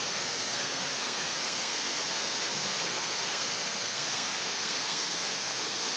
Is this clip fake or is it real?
fake